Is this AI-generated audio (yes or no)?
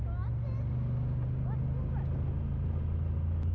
no